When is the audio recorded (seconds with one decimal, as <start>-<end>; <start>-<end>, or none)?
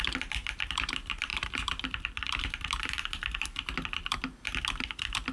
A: none